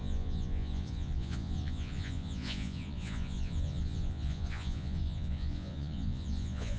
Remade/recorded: remade